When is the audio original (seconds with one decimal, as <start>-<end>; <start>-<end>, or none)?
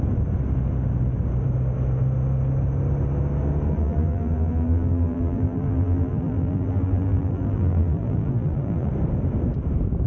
0.0-3.7; 8.9-10.1